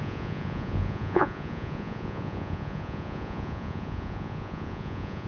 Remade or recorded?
remade